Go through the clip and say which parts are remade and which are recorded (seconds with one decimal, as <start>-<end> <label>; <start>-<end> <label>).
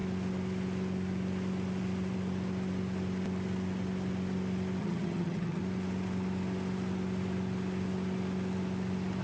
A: 0.0-4.8 recorded; 4.8-5.6 remade; 5.6-9.2 recorded